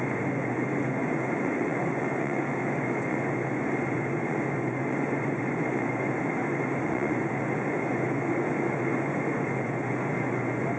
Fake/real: fake